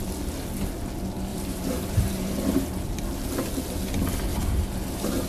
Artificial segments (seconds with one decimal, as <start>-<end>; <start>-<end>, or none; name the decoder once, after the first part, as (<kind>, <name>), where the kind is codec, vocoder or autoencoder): 1.3-2.9 (vocoder, BigVGAN v2); 4.3-5.3